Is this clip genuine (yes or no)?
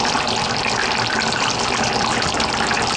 yes